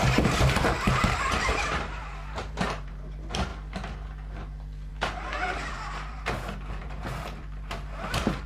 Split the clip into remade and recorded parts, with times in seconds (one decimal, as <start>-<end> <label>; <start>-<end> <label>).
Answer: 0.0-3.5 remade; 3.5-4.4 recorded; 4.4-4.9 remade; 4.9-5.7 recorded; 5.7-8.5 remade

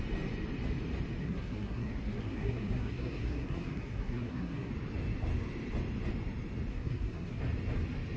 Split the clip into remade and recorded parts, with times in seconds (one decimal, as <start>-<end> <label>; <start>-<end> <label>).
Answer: 0.0-1.2 recorded; 1.2-4.7 remade; 4.7-6.7 recorded; 6.7-7.4 remade; 7.4-8.2 recorded

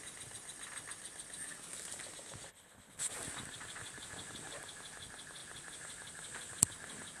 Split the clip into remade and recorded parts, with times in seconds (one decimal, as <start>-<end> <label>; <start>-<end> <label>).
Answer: 0.0-2.5 recorded; 2.5-3.1 remade; 3.1-7.2 recorded